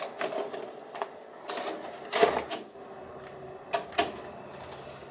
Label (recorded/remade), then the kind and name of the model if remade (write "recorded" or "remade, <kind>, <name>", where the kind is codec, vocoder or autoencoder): recorded